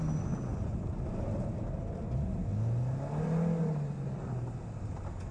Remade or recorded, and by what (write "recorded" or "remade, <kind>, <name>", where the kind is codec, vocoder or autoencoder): recorded